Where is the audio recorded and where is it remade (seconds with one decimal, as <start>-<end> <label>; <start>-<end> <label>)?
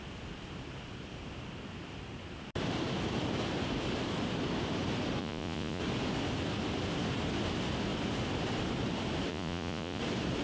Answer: 0.0-5.2 recorded; 5.2-5.8 remade; 5.8-9.3 recorded; 9.3-10.0 remade; 10.0-10.4 recorded